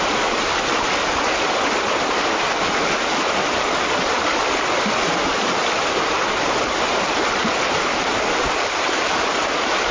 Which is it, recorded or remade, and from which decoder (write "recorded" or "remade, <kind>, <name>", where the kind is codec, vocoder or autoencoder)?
recorded